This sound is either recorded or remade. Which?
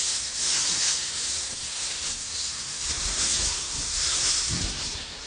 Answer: remade